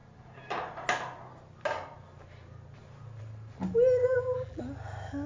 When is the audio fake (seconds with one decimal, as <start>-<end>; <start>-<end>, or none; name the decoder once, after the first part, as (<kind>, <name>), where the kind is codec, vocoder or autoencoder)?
4.0-4.6 (vocoder, BigVGAN v2)

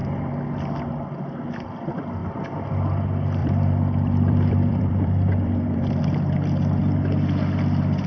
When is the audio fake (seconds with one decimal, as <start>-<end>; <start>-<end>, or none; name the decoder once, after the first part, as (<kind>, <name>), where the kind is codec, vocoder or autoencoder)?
0.0-1.4 (vocoder, BigVGAN v2); 2.2-2.7; 3.4-6.0